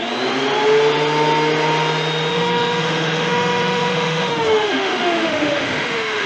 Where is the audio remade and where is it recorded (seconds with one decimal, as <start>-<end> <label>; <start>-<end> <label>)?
0.0-2.3 recorded; 2.3-6.3 remade